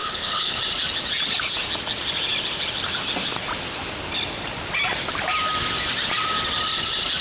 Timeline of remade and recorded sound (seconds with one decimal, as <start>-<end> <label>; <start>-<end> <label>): 0.0-0.6 remade; 0.6-7.2 recorded